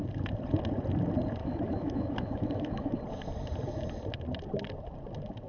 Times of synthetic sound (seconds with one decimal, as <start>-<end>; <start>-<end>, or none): 1.4-3.0